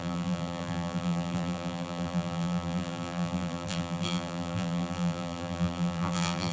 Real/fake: fake